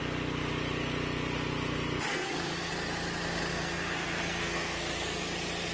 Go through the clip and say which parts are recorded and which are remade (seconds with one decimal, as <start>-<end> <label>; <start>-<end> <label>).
0.0-2.1 recorded; 2.1-2.7 remade; 2.7-3.5 recorded; 3.5-5.2 remade; 5.2-5.7 recorded